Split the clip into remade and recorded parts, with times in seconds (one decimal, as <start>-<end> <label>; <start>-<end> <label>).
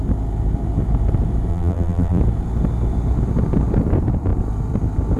0.0-1.5 recorded; 1.5-2.2 remade; 2.2-5.2 recorded